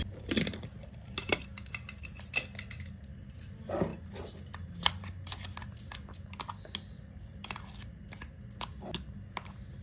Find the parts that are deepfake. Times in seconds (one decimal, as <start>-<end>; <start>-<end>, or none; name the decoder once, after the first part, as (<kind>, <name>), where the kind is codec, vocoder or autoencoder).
none